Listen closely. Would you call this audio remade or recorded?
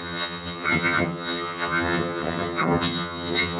remade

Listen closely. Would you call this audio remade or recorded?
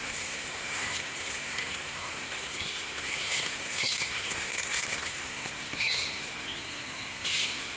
remade